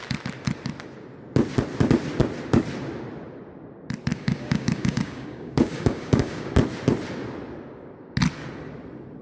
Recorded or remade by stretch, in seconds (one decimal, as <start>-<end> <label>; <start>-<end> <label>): 0.0-4.1 recorded; 4.1-6.5 remade; 6.5-9.2 recorded